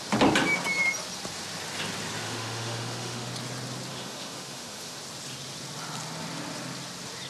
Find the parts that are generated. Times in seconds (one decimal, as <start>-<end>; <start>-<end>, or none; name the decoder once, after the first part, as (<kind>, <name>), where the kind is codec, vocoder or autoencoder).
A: 2.2-3.3 (autoencoder, DAC-VAE); 3.9-5.0